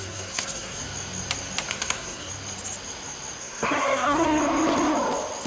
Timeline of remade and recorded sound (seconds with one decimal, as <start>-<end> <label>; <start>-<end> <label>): 0.0-0.8 remade; 0.8-1.7 recorded; 1.7-2.3 remade; 2.3-3.4 recorded; 3.4-4.4 remade; 4.4-5.5 recorded